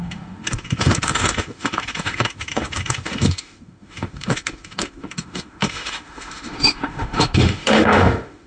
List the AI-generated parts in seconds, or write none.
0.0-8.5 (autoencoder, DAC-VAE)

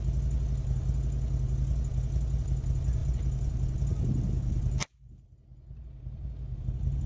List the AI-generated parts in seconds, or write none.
none

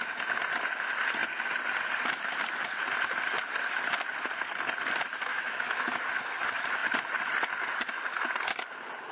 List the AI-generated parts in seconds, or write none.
5.3-6.0 (autoencoder, DAC-VAE)